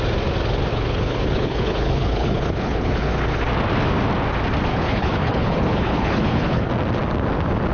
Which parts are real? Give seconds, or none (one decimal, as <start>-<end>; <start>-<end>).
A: 0.0-0.7; 3.1-4.7; 6.7-7.7